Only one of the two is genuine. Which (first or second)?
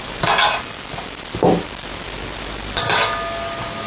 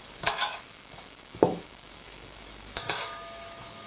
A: first